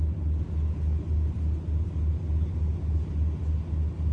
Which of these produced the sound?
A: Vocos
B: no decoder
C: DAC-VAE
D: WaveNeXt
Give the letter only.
B